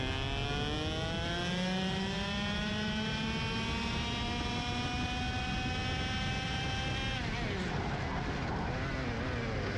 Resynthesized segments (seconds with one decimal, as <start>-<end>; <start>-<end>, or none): none